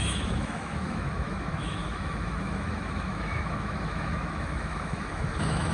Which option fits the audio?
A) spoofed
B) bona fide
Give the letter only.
A